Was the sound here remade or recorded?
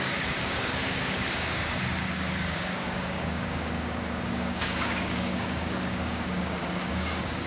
remade